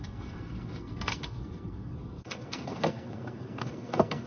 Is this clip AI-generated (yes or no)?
yes